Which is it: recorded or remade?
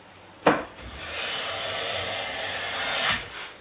recorded